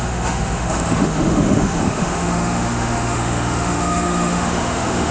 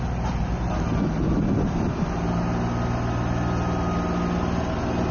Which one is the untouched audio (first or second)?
second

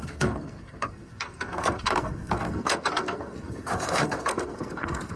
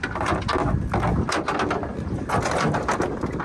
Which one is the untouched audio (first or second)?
second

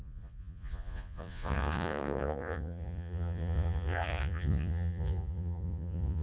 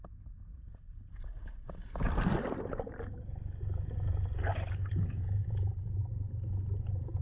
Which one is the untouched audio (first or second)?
second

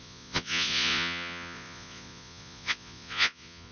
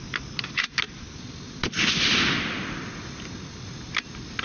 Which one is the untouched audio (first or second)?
second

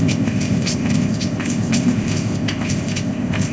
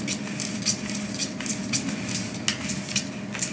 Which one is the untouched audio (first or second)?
second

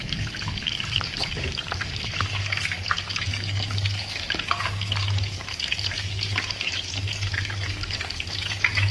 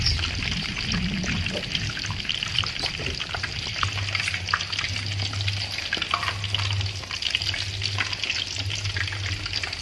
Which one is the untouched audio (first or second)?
second